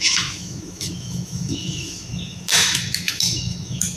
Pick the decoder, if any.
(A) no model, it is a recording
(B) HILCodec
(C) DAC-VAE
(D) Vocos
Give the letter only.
C